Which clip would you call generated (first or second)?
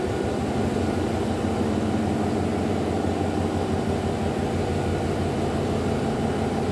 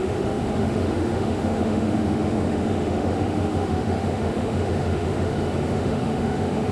second